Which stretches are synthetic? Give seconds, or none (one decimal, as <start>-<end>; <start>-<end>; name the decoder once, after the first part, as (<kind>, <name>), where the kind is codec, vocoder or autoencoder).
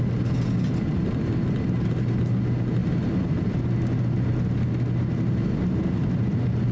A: none